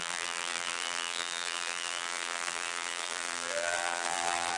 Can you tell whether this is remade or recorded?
remade